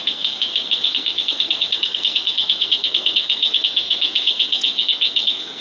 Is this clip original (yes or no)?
no